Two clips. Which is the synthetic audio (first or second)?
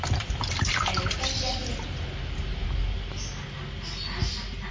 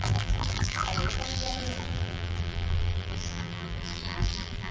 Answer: second